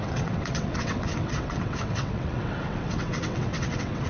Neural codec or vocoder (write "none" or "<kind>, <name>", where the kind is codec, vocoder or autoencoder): vocoder, WaveNeXt